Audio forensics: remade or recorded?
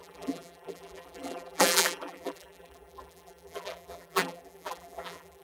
remade